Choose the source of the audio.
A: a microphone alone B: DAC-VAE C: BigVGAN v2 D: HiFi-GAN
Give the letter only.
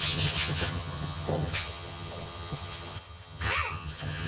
D